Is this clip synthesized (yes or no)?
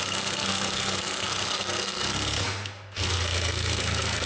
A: yes